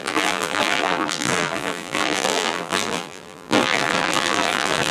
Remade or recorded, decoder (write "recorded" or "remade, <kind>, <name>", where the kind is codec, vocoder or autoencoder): remade, vocoder, BigVGAN v2